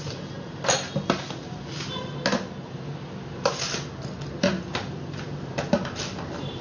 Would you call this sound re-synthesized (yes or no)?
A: no